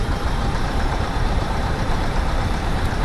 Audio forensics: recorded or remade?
remade